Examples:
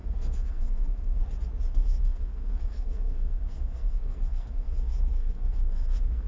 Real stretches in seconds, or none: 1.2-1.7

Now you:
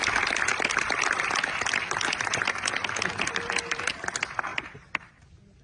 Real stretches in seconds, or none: 0.0-5.6

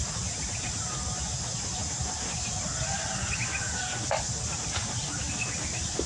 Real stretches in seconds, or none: 0.0-6.1